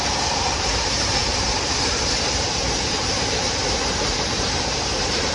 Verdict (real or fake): fake